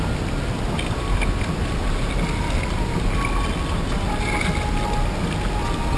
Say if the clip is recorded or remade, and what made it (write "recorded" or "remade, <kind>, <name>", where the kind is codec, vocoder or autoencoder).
recorded